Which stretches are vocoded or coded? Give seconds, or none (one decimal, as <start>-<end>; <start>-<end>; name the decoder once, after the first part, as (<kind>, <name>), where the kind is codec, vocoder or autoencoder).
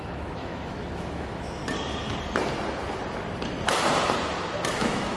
0.0-1.6 (autoencoder, DAC-VAE); 4.7-5.2